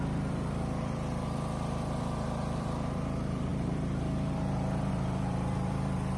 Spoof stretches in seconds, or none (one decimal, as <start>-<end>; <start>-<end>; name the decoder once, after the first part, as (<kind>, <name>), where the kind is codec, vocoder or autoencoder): 0.0-6.2 (vocoder, BigVGAN v2)